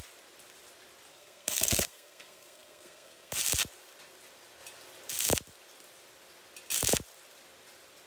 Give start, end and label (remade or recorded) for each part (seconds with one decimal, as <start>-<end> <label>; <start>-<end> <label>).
0.0-1.1 recorded; 1.1-3.3 remade; 3.3-8.1 recorded